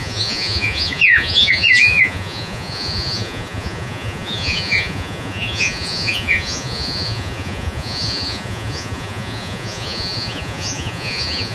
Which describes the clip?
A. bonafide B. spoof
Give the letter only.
B